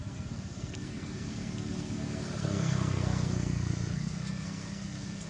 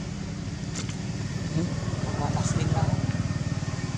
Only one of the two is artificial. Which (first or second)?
first